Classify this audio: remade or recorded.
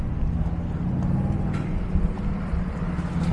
recorded